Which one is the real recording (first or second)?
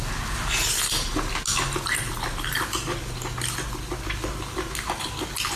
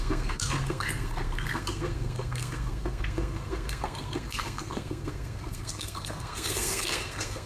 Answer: first